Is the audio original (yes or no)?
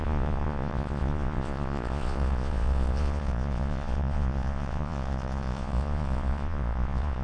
no